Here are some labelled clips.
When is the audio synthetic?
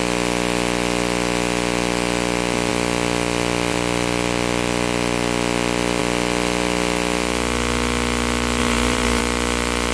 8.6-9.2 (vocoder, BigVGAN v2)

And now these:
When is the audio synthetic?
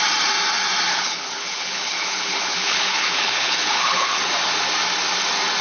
0.9-4.2 (codec, HILCodec)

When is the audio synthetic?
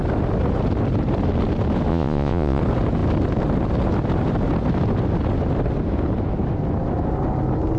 1.9-2.6 (vocoder, Vocos)